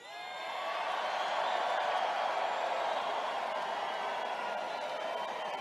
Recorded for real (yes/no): yes